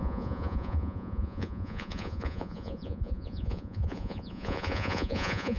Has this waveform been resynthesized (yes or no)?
yes